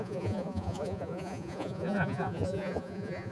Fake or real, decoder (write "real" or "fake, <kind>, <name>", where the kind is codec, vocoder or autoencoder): fake, vocoder, Vocos